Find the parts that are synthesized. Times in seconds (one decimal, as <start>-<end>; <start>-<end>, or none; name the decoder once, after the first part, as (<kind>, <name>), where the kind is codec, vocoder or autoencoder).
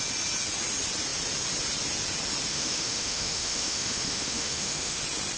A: 2.5-5.0 (autoencoder, DAC-VAE)